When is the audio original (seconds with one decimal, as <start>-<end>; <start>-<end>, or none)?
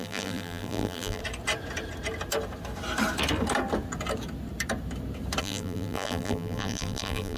1.2-5.4